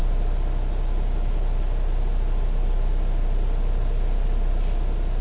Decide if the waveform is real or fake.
real